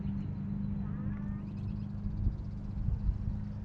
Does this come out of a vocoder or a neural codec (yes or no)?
no